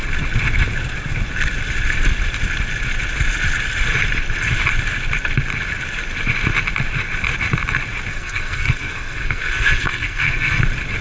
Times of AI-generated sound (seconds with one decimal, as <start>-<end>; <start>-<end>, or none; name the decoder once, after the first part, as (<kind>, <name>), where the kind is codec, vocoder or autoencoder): 8.1-10.6 (codec, SNAC)